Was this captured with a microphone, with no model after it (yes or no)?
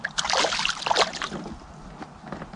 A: yes